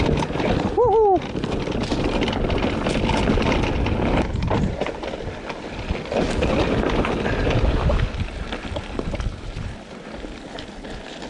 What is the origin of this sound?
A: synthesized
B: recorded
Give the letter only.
B